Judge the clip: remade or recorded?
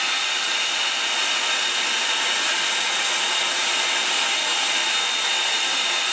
recorded